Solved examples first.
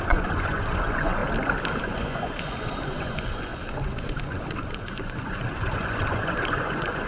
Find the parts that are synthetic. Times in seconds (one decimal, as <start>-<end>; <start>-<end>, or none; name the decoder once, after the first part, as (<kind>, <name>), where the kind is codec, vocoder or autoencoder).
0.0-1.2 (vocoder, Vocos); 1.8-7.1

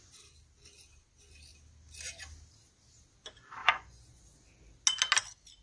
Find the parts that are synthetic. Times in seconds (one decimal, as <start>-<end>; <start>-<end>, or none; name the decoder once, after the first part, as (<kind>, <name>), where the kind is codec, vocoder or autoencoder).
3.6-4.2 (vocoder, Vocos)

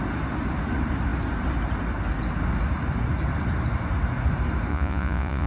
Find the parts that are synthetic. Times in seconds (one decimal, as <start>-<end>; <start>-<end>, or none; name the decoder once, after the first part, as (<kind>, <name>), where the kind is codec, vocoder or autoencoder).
4.7-5.5 (vocoder, Vocos)

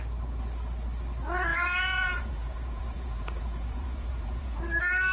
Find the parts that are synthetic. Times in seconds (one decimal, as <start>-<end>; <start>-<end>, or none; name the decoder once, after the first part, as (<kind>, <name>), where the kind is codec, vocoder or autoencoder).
1.5-4.6 (vocoder, Vocos)

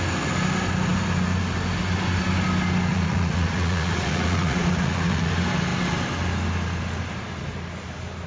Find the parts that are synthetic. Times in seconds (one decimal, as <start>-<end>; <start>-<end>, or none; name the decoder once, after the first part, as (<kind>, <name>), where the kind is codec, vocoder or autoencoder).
2.9-5.3 (vocoder, Vocos)

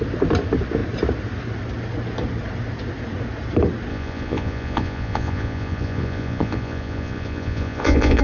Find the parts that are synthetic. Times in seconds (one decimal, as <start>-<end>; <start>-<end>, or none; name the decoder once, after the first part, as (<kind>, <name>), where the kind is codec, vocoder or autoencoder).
3.9-8.2 (vocoder, Vocos)

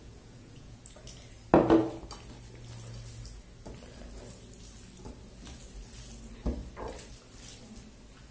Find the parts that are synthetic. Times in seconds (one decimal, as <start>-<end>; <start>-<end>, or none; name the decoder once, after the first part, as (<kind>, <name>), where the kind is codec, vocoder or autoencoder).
0.0-0.8 (vocoder, Vocos)

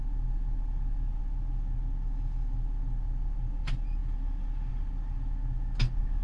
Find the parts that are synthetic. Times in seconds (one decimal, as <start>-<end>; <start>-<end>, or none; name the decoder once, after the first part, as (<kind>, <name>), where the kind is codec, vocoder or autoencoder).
none